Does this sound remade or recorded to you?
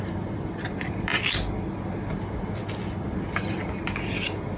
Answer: recorded